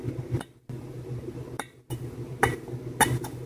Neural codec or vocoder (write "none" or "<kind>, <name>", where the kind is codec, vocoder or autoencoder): none